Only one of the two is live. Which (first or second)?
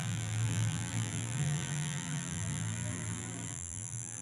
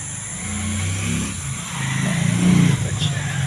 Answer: second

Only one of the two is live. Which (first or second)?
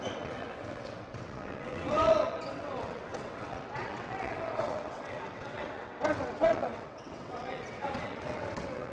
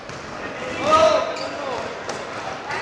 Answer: second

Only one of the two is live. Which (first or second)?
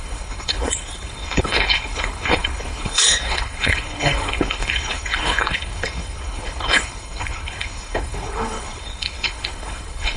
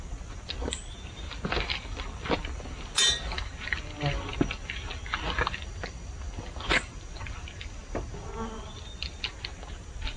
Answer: second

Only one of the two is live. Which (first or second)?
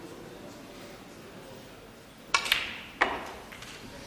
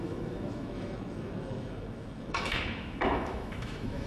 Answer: first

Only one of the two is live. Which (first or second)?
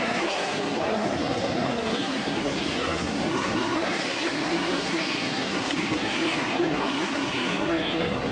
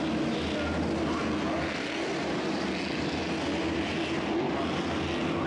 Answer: second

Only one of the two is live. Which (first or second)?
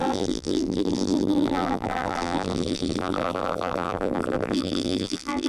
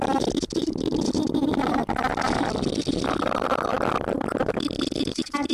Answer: second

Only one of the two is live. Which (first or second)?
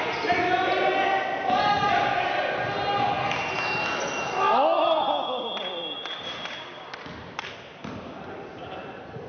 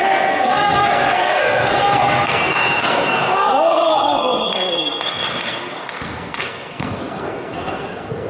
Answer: first